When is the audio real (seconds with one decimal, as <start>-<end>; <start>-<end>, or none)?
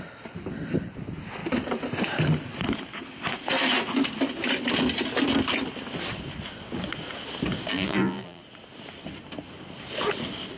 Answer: 0.0-7.7; 8.4-10.6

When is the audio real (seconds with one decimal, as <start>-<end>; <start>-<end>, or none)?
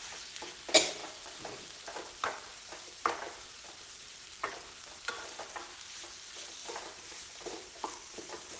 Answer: 0.0-1.0; 1.8-2.5; 3.2-6.6; 7.8-8.6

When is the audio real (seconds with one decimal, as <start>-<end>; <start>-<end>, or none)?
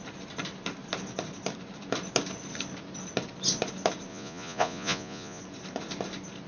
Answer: 0.0-4.1; 5.4-6.5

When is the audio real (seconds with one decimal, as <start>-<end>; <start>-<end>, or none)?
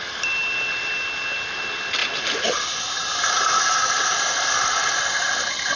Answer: 0.0-2.0; 4.5-5.8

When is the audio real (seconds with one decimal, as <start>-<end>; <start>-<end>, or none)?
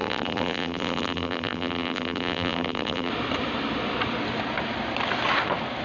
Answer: 3.1-5.8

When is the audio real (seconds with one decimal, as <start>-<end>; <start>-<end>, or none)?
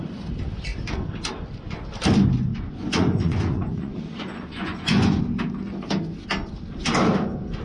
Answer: 0.0-2.5; 5.2-7.6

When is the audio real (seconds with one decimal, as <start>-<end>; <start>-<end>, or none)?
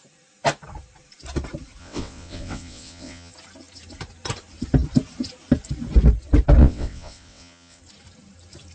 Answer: 0.0-1.8; 3.3-6.6; 7.8-8.7